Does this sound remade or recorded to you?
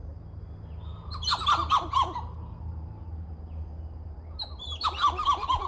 recorded